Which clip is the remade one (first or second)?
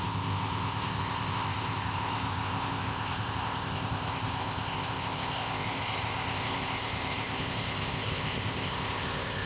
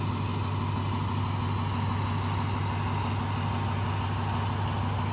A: first